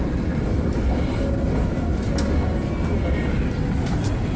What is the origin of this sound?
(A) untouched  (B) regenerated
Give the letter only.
A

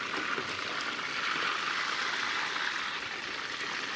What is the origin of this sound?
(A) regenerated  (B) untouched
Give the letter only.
B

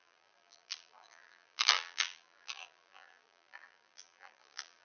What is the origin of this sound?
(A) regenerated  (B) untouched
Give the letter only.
A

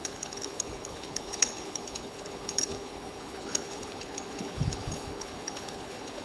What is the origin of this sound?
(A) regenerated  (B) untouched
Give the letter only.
A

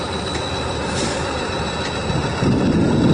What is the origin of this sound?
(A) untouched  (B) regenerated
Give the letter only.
A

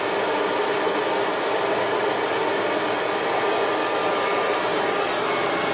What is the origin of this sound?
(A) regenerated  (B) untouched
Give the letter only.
B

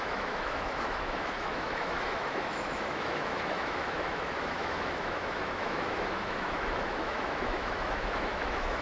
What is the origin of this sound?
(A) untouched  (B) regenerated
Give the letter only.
B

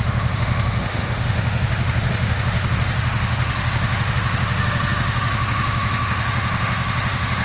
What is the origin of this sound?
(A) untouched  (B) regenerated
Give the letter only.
B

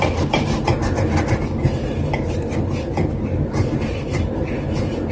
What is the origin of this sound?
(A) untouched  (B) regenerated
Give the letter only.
A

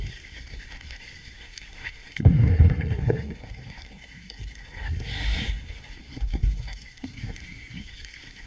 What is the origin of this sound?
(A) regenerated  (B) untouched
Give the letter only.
A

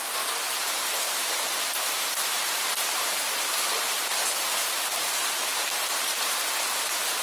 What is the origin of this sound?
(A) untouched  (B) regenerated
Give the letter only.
B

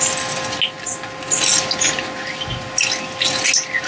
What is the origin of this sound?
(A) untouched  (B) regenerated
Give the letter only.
A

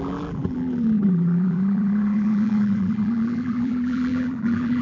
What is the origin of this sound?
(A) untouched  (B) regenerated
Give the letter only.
B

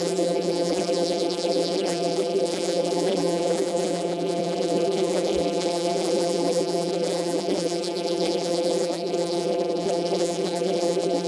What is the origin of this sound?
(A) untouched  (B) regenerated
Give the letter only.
B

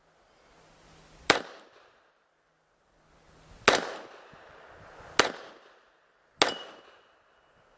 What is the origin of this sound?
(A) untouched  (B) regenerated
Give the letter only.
A